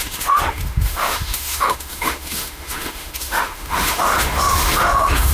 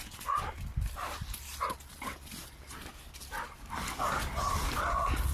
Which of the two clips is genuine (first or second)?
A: second